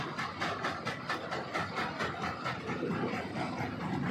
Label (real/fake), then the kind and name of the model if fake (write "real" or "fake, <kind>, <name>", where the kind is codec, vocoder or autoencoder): real